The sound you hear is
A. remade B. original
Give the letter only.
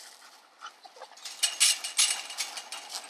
B